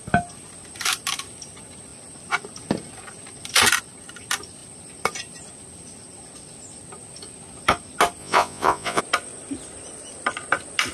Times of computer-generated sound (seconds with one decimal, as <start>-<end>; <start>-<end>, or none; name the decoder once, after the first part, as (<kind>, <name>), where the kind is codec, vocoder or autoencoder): 8.2-9.0 (vocoder, Vocos)